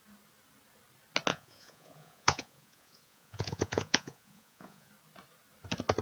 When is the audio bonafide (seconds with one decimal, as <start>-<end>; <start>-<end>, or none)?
0.0-1.3; 4.9-6.0